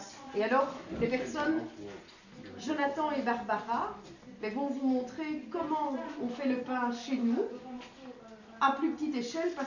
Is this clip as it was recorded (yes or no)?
yes